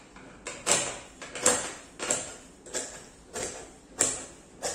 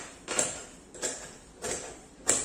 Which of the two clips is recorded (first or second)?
first